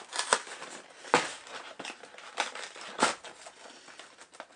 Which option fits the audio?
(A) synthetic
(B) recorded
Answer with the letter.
B